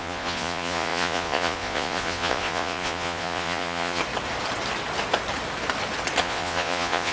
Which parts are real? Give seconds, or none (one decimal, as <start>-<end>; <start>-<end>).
4.0-6.2